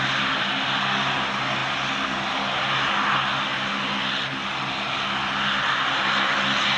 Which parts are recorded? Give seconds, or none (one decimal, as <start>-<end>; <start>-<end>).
0.0-6.8